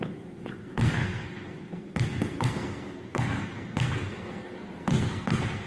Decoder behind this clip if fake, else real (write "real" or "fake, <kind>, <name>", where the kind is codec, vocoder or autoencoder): fake, codec, SNAC